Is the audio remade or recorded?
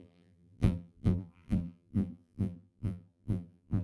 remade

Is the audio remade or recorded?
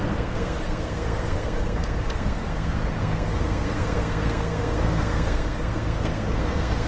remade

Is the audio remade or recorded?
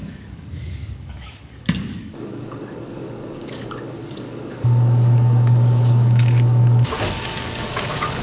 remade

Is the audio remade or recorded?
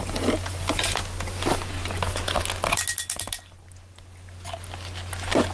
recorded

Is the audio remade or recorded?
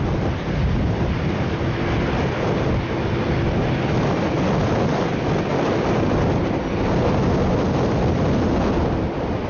recorded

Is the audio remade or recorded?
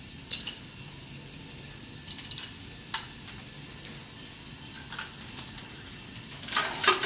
recorded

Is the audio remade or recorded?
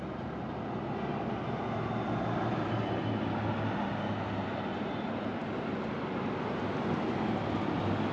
recorded